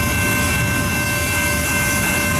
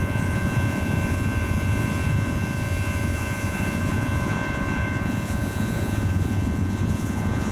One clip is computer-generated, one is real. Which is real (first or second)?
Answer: first